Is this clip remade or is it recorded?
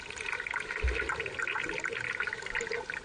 recorded